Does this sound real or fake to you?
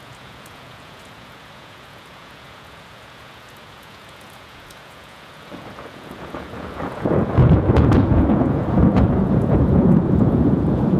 fake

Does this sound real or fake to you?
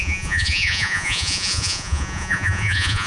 fake